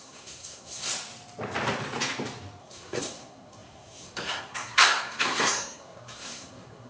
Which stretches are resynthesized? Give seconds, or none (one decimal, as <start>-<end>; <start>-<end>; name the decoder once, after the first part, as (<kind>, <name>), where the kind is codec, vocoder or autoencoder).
0.0-0.9 (codec, SNAC); 2.6-6.9